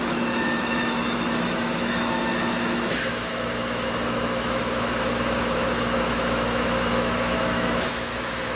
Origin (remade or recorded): remade